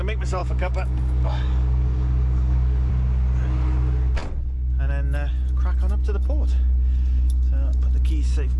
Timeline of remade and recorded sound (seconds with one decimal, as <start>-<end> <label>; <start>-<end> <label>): 0.0-0.4 recorded; 0.4-2.9 remade; 2.9-8.6 recorded